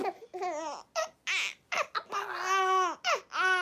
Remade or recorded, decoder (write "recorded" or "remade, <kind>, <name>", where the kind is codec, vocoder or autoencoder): recorded